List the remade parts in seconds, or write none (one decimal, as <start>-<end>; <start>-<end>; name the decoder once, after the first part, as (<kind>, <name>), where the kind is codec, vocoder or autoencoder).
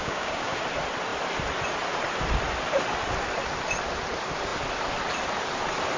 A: 0.0-0.6 (codec, DAC)